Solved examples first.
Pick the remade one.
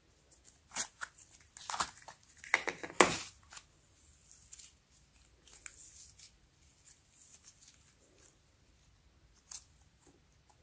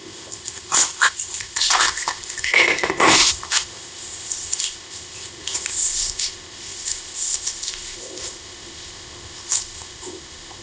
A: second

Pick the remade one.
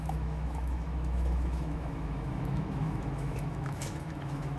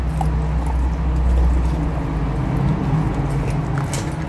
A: first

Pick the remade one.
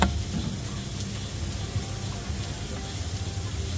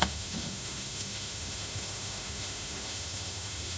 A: second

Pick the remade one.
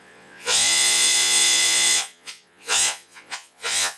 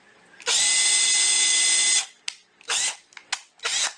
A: first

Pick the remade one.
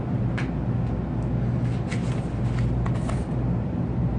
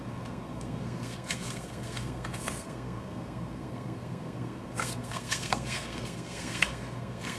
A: second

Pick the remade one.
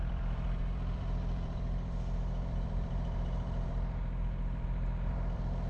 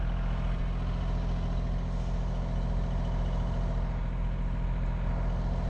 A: first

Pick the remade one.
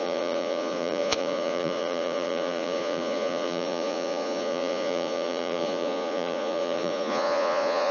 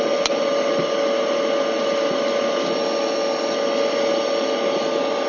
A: first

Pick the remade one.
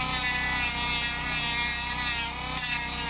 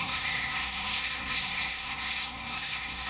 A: second